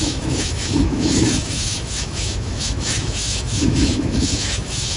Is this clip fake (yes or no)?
yes